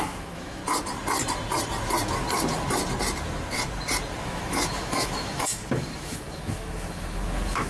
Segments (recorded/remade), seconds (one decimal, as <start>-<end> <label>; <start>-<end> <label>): 0.0-0.6 remade; 0.6-4.2 recorded; 4.2-7.7 remade